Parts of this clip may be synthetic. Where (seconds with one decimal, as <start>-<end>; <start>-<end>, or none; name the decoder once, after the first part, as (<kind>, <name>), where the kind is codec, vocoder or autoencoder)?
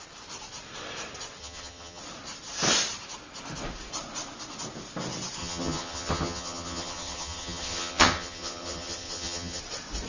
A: 1.4-2.0 (vocoder, HiFi-GAN); 5.4-9.6